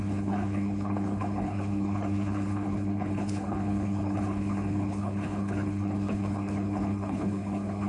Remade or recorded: remade